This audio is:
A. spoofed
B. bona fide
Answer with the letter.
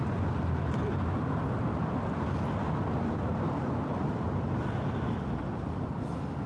B